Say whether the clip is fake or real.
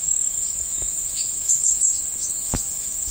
fake